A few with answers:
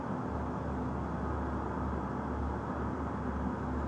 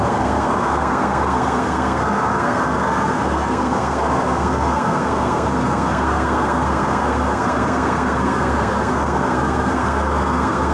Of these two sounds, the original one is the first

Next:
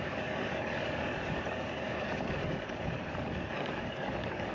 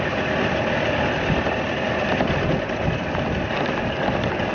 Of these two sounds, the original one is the second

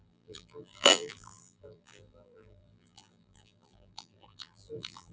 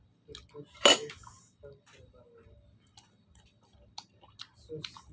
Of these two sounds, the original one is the second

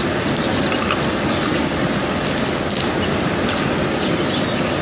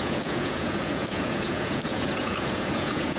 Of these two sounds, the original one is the first